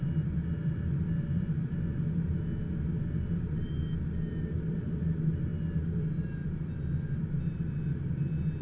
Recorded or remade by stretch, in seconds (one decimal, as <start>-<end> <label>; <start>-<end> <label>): 0.0-8.6 recorded